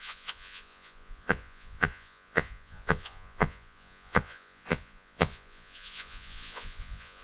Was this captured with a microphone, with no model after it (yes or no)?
no